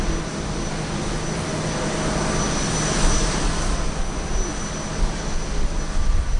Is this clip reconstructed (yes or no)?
no